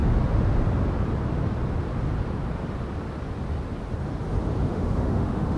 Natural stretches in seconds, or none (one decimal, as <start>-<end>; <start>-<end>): 0.0-4.7